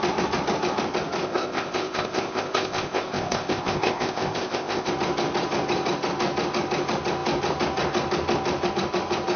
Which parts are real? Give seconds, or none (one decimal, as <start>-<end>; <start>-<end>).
0.0-1.2; 4.9-9.4